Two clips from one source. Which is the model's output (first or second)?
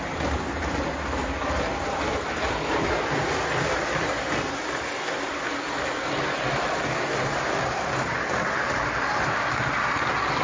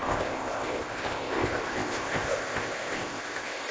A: second